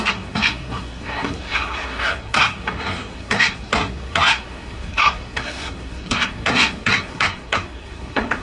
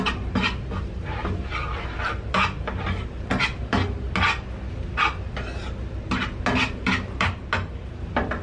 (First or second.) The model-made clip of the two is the first